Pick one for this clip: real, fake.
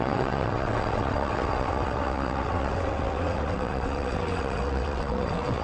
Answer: fake